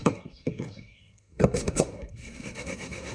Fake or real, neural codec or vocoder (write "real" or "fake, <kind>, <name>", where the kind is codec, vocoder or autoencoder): fake, codec, SNAC